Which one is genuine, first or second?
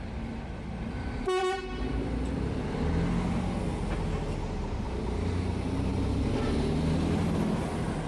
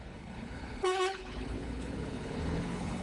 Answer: first